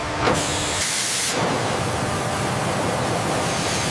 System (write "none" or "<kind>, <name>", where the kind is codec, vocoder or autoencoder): vocoder, BigVGAN v2